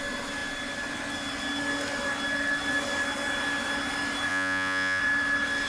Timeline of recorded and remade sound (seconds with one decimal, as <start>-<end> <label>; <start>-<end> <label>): 0.0-4.3 recorded; 4.3-5.0 remade; 5.0-5.7 recorded